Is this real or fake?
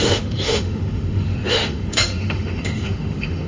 fake